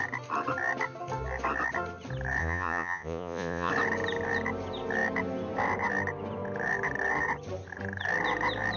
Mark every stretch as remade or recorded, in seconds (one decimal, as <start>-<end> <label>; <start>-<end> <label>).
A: 0.0-2.4 recorded; 2.4-3.7 remade; 3.7-8.8 recorded